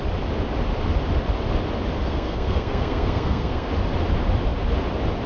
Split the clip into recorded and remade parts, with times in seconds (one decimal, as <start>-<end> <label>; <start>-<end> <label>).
0.0-2.0 recorded; 2.0-3.7 remade; 3.7-5.3 recorded

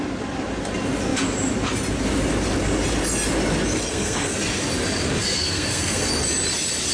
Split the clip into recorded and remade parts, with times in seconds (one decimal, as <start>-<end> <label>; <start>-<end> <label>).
0.0-3.9 recorded; 3.9-4.4 remade; 4.4-5.2 recorded; 5.2-6.1 remade; 6.1-6.9 recorded

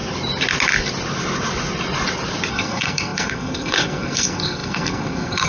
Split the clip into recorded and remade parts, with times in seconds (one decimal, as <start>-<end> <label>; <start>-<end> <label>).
0.0-2.5 recorded; 2.5-5.5 remade

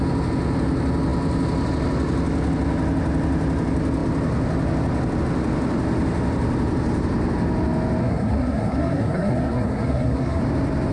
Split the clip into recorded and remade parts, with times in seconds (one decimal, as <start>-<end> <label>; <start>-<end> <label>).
0.0-8.0 recorded; 8.0-10.4 remade; 10.4-10.9 recorded

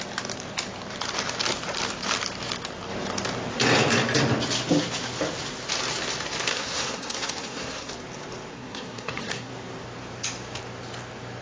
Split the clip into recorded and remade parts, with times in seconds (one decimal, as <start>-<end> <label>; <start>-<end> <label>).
0.0-6.5 recorded; 6.5-7.9 remade; 7.9-8.5 recorded; 8.5-9.5 remade; 9.5-11.4 recorded

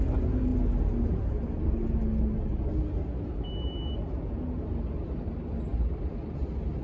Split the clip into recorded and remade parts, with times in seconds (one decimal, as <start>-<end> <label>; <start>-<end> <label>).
0.0-6.8 recorded

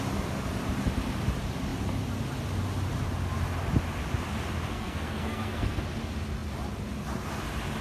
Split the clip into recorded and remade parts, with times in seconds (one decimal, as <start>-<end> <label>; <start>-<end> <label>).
0.0-4.7 recorded; 4.7-5.8 remade; 5.8-7.8 recorded